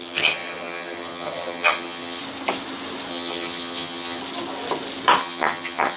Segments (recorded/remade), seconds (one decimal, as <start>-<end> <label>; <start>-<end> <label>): 0.0-2.2 remade; 2.2-3.1 recorded; 3.1-4.2 remade; 4.2-5.2 recorded; 5.2-6.0 remade